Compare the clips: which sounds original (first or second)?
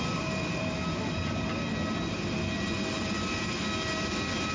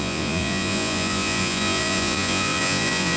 first